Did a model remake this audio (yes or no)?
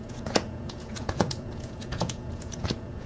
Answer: yes